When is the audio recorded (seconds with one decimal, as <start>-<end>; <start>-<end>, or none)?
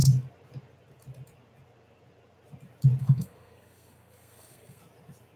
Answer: 0.0-3.0; 4.8-5.4